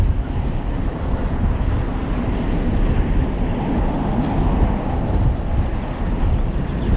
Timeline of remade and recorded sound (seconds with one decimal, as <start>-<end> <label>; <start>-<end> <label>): 0.0-7.0 recorded